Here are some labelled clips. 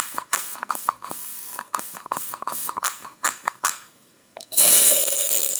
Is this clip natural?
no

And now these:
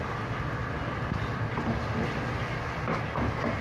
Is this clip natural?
yes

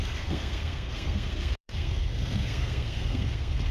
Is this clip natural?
no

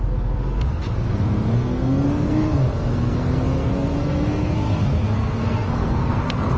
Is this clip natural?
no